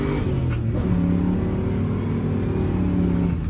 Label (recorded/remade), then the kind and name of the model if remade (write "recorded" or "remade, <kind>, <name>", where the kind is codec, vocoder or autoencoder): recorded